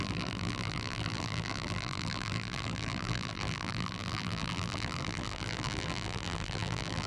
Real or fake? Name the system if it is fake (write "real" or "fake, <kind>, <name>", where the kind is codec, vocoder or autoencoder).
fake, vocoder, BigVGAN v2